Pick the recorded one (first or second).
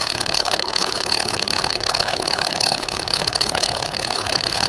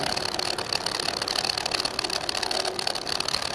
second